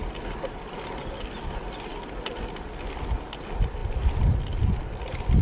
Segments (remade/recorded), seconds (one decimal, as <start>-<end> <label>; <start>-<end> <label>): 0.0-5.4 recorded

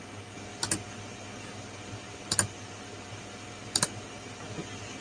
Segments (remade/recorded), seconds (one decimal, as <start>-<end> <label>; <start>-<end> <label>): 0.0-5.0 recorded